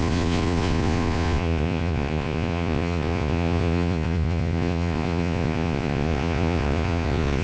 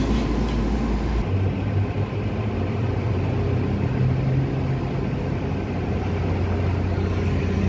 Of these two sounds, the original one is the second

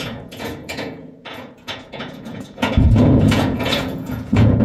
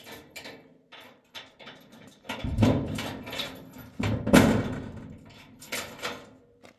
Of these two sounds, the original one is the second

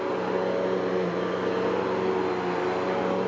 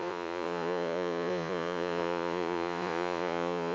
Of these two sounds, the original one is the first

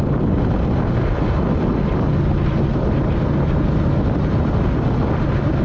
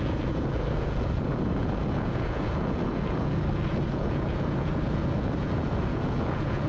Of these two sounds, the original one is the first